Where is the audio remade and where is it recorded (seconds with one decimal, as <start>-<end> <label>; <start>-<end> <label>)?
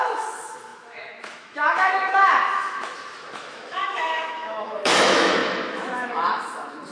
0.0-6.9 remade